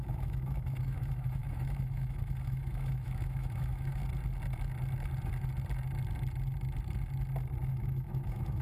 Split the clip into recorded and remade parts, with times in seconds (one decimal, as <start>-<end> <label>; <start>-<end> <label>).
0.0-4.0 remade; 4.0-7.7 recorded; 7.7-8.6 remade